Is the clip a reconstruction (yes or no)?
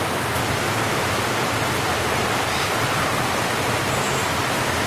no